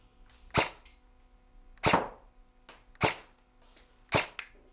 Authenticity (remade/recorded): recorded